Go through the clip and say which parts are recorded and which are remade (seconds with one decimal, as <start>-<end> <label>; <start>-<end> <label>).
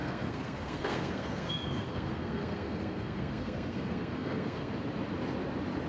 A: 0.0-4.7 remade; 4.7-5.9 recorded